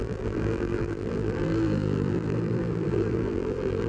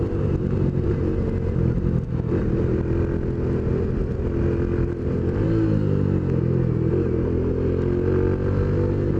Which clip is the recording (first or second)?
second